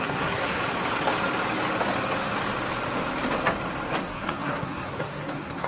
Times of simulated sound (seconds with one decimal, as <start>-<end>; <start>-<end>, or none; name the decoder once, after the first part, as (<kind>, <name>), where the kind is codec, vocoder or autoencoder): 0.0-0.6 (codec, SNAC); 4.0-5.7